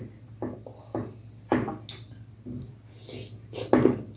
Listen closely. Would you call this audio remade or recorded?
recorded